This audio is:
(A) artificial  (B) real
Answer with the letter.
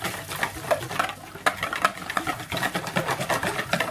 B